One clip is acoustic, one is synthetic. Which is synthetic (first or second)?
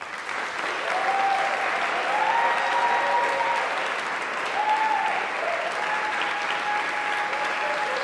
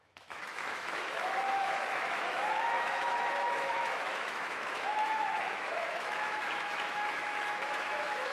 second